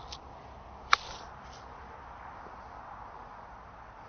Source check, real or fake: real